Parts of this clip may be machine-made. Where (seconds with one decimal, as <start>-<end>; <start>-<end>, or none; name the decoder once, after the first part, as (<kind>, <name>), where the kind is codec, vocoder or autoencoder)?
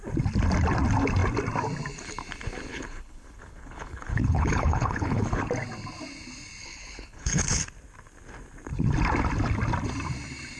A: 2.7-5.4 (codec, HILCodec); 6.6-7.6